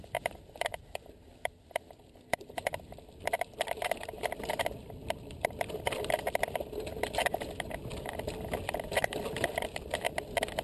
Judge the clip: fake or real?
fake